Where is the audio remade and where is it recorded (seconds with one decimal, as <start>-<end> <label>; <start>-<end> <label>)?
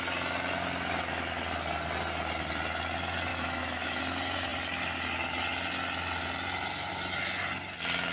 0.0-3.3 recorded; 3.3-4.0 remade; 4.0-8.1 recorded